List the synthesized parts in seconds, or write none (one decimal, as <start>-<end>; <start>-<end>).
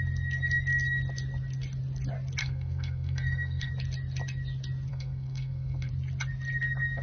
2.4-3.7; 4.9-5.9